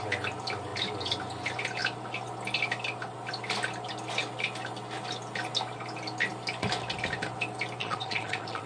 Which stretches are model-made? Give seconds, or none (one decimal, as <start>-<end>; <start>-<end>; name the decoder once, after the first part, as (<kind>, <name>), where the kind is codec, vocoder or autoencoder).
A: 7.8-8.7 (vocoder, Vocos)